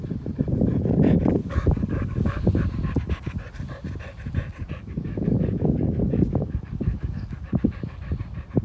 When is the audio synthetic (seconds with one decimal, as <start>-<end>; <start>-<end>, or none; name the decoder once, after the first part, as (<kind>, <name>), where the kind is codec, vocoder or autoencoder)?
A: 1.4-2.4 (codec, DAC); 4.8-8.0